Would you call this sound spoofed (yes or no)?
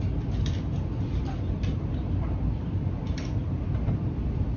yes